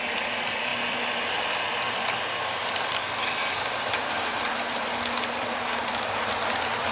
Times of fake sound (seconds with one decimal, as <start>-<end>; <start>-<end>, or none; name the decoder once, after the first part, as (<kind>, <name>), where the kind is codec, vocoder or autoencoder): none